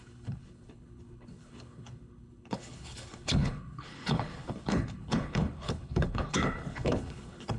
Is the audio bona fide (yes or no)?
no